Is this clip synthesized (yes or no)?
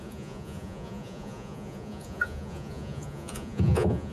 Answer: yes